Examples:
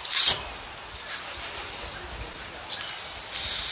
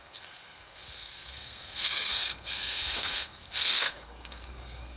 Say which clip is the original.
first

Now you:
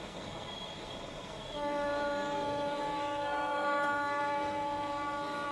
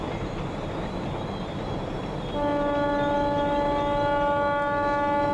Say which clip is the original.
second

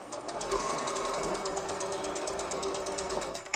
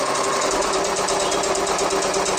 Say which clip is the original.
second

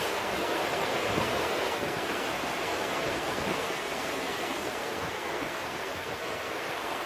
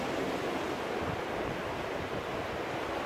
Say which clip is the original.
second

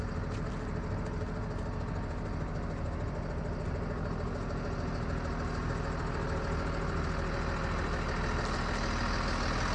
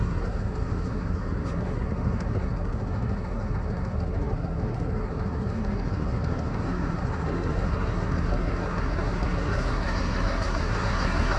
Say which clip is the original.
first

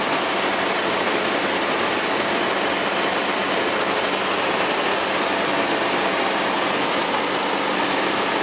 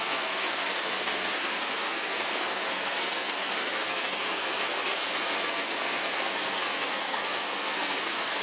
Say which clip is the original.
first